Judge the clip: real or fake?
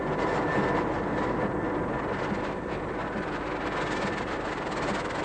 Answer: real